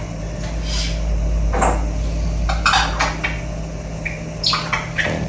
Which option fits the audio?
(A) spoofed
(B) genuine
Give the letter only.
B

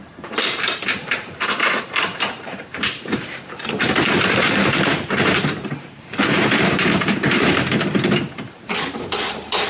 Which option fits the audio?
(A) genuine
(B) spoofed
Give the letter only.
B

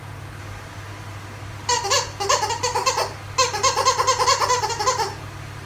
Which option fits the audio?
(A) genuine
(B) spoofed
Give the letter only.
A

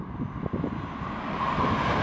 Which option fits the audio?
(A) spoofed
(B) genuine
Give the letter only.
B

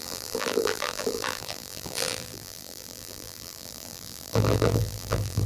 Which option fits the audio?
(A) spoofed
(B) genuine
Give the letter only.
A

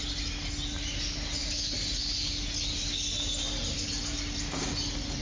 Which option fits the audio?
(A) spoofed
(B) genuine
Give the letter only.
B